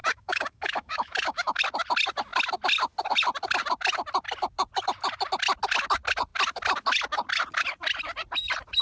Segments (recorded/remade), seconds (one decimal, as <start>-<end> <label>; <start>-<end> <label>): 0.0-1.6 remade; 1.6-8.8 recorded